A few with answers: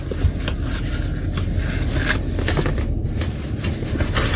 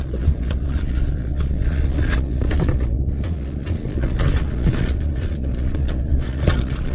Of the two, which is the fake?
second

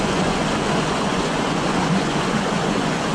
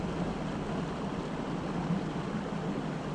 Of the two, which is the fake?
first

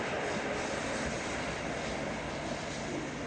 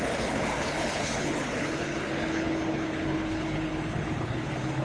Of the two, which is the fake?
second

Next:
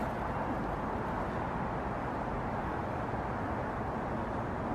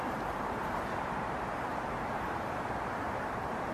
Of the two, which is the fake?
second